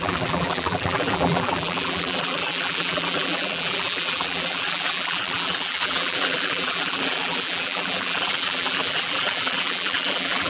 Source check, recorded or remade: remade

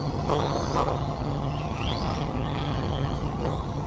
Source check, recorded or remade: remade